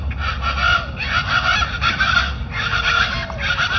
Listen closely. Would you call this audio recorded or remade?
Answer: recorded